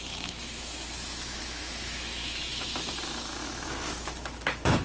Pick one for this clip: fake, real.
fake